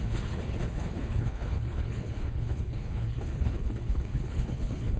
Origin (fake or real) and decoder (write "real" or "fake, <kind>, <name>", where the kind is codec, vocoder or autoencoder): fake, codec, HILCodec